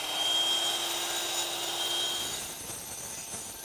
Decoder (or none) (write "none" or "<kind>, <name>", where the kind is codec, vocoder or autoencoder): none